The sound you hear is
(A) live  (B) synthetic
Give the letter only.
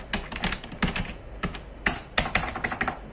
A